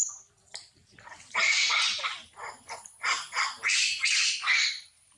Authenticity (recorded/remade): recorded